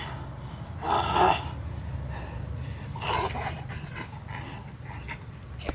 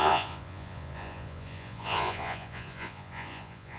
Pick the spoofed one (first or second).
second